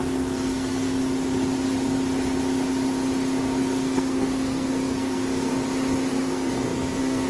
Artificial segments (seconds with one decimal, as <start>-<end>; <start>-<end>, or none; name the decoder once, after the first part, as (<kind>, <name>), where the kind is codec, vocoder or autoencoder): 0.0-1.0 (codec, SNAC); 3.4-5.5; 6.1-7.3